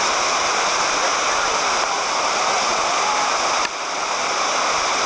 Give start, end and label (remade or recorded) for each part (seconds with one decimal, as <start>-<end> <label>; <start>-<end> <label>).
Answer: 0.0-5.1 recorded